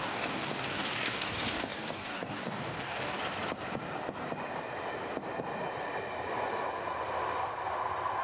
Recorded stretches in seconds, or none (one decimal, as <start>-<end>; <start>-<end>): 3.2-8.2